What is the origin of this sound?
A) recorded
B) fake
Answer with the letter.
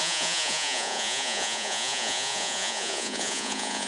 B